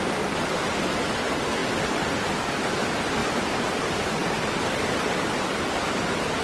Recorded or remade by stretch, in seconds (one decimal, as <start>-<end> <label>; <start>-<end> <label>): 0.0-6.4 recorded